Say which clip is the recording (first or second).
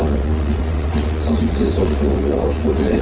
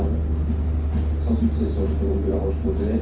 second